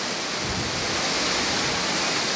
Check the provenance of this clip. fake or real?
real